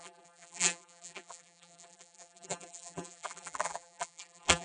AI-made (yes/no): yes